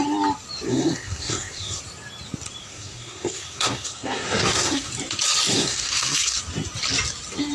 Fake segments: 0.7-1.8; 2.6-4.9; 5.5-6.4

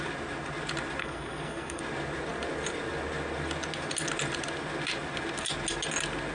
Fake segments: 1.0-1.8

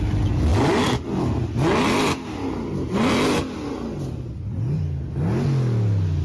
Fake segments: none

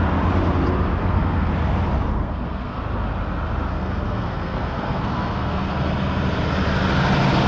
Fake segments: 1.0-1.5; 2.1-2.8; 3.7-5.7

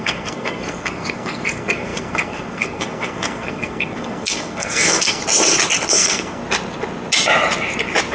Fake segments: 0.0-5.2; 5.9-6.4